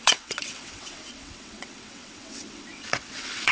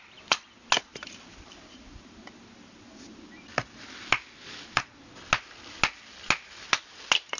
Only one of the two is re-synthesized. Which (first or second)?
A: first